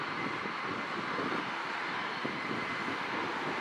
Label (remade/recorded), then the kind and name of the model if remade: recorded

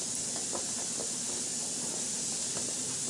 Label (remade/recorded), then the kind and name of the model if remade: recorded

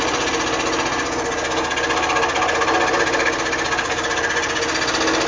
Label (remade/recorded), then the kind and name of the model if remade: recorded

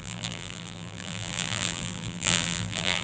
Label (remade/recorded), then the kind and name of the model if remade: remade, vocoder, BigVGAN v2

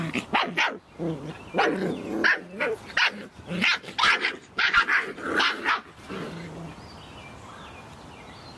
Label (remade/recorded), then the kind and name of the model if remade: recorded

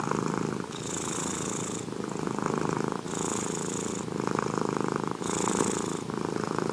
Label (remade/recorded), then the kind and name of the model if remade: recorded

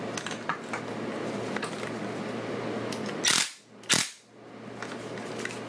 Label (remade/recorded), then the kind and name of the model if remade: recorded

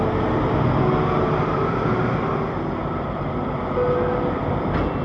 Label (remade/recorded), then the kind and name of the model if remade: recorded